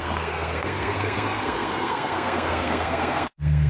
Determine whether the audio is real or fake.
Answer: fake